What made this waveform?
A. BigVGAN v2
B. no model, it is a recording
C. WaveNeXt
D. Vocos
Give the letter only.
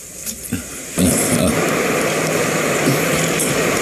A